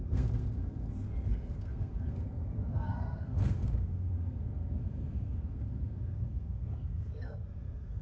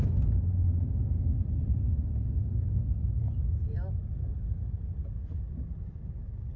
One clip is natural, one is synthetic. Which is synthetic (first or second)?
first